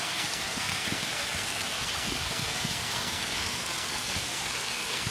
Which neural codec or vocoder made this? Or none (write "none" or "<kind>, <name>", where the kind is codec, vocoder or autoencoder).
codec, SNAC